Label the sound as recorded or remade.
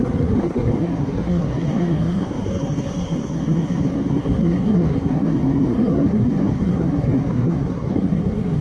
remade